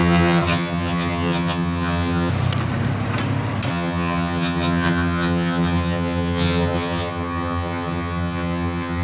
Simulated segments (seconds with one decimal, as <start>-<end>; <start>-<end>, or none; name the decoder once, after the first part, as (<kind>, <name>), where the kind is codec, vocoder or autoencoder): 0.0-2.3 (vocoder, HiFi-GAN); 3.7-9.0